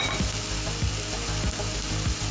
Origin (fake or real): real